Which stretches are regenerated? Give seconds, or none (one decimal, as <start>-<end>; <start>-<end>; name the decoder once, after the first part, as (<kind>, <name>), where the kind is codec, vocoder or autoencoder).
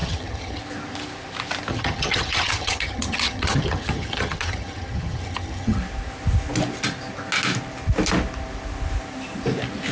0.0-0.6 (vocoder, HiFi-GAN); 1.7-5.8